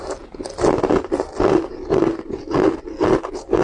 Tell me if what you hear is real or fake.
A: real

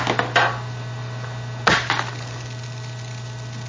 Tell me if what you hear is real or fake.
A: real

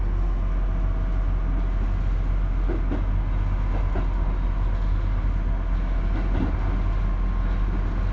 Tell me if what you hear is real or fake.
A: real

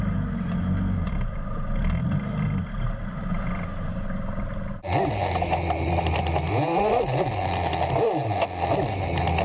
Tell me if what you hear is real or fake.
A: real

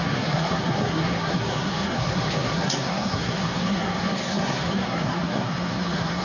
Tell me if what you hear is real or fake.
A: fake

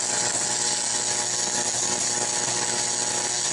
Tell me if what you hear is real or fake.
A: real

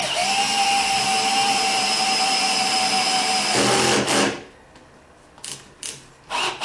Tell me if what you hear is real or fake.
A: real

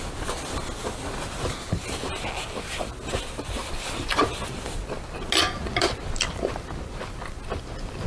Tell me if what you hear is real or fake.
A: real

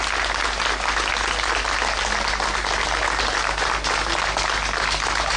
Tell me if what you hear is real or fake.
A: real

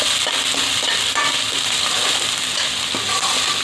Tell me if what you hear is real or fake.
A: real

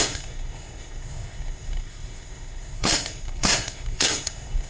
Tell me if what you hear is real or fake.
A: fake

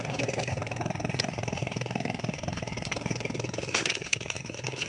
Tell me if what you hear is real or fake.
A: fake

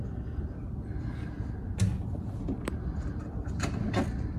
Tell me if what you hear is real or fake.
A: real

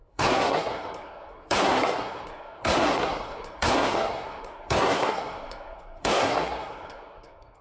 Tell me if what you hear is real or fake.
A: fake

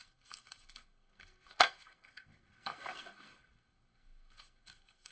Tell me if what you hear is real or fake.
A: fake